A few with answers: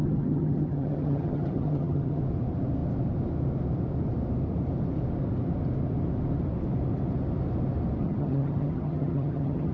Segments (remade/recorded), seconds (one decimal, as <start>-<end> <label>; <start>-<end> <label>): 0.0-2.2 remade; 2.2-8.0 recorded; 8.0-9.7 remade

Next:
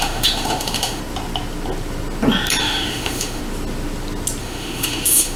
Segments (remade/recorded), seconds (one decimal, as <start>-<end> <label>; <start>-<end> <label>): 0.0-1.0 remade; 1.0-2.6 recorded; 2.6-3.4 remade; 3.4-4.4 recorded; 4.4-5.4 remade

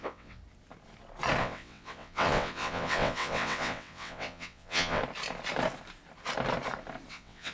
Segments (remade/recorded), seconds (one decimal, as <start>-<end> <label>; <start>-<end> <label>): 0.0-0.4 remade; 0.4-1.4 recorded; 1.4-5.0 remade; 5.0-7.1 recorded; 7.1-7.5 remade

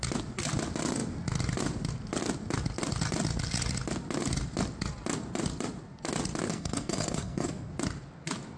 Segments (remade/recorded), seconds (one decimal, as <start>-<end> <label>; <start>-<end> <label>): 0.0-6.5 recorded; 6.5-7.7 remade; 7.7-8.6 recorded